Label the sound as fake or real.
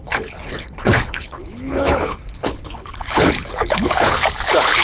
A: fake